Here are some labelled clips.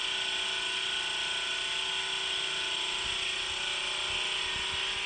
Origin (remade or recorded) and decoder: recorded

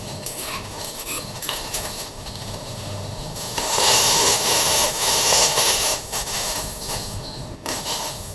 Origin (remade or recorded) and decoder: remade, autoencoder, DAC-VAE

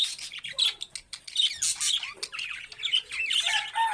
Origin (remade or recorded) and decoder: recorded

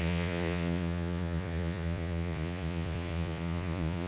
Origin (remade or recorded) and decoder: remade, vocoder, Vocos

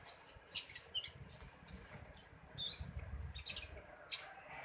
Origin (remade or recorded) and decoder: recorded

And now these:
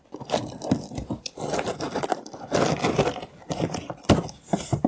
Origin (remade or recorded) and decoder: recorded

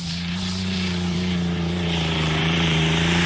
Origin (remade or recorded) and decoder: remade, vocoder, BigVGAN v2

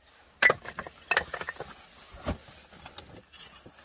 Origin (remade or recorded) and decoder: recorded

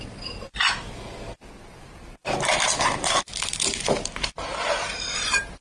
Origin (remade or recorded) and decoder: remade, vocoder, BigVGAN v2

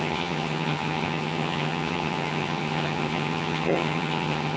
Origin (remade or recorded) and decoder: remade, vocoder, HiFi-GAN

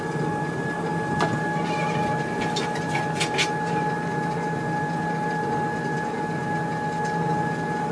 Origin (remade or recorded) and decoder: recorded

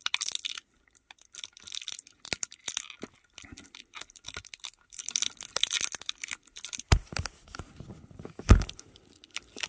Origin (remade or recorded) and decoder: recorded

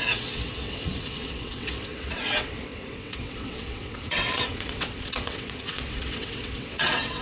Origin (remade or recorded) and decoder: remade, vocoder, WaveNeXt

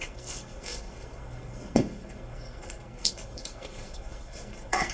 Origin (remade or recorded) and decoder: remade, codec, SNAC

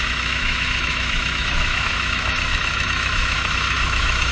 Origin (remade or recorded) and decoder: remade, autoencoder, DAC-VAE